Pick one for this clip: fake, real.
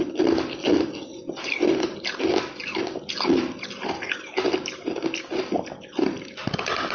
real